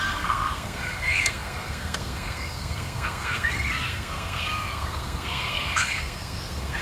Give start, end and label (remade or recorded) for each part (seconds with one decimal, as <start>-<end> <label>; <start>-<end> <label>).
0.0-6.8 remade